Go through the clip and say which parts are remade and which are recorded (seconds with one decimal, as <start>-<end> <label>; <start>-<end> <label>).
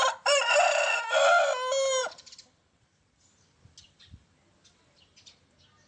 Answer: 0.0-2.0 recorded; 2.0-3.3 remade; 3.3-5.9 recorded